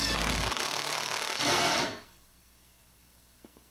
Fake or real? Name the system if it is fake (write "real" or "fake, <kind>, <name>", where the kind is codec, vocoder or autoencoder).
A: fake, codec, SNAC